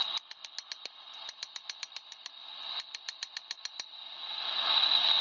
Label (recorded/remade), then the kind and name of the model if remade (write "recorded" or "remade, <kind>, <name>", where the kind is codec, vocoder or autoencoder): recorded